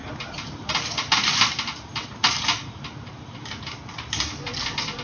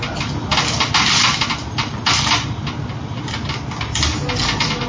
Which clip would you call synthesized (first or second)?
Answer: first